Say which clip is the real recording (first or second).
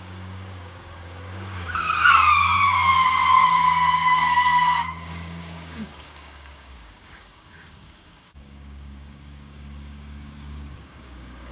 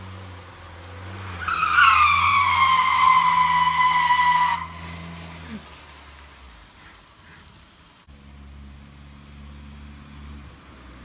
second